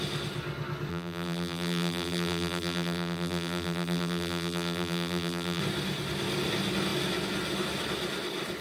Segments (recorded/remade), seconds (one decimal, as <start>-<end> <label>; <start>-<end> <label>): 0.0-0.9 recorded; 0.9-5.6 remade; 5.6-8.6 recorded